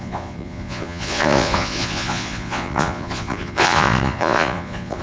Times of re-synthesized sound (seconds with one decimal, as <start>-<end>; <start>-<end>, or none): 0.0-5.0